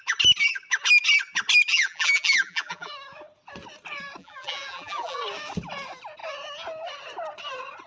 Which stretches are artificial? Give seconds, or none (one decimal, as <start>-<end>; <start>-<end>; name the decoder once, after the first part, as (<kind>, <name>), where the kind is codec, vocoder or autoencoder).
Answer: 1.7-2.9 (vocoder, BigVGAN v2); 4.2-5.2